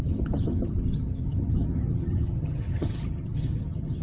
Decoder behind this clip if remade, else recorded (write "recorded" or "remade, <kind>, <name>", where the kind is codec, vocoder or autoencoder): remade, vocoder, HiFi-GAN